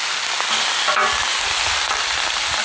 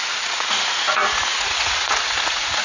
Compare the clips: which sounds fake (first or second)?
second